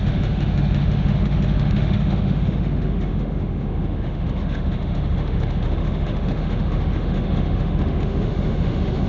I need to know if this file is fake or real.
fake